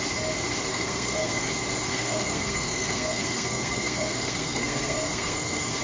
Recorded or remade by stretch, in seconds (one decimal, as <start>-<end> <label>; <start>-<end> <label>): 0.0-0.7 recorded; 0.7-1.5 remade; 1.5-1.9 recorded; 1.9-5.8 remade